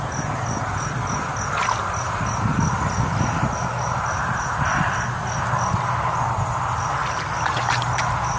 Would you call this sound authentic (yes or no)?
yes